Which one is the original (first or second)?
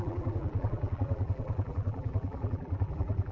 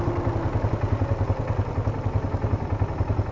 second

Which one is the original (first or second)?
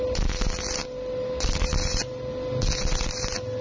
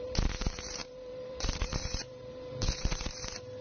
first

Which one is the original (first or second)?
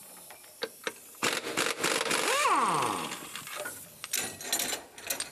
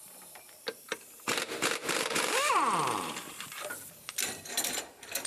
first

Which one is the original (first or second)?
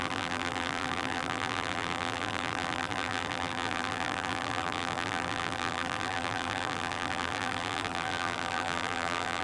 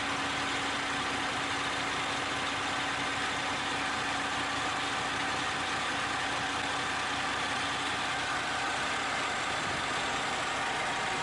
second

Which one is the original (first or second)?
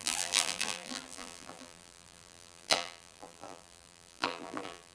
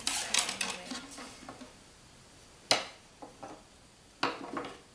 second